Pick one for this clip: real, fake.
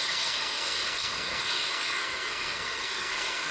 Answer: fake